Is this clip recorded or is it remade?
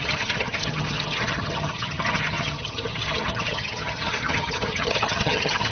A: remade